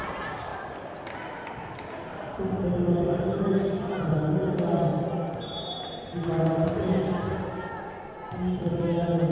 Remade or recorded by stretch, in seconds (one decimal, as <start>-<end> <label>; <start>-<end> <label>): 0.0-6.8 recorded; 6.8-7.5 remade; 7.5-9.3 recorded